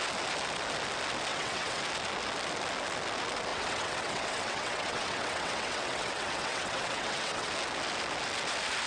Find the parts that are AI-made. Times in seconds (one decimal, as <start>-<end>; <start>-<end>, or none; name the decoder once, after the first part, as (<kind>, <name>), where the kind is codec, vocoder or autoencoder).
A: 1.3-1.8 (vocoder, WaveNeXt); 3.5-7.5